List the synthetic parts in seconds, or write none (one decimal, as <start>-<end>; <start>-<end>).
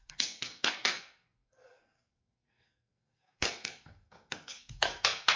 0.0-5.4